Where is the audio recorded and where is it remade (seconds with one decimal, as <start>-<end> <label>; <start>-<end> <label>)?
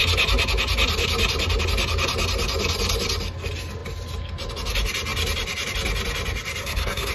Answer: 0.0-6.6 recorded; 6.6-7.1 remade